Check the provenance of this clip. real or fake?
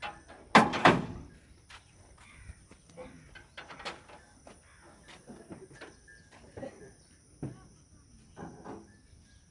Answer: real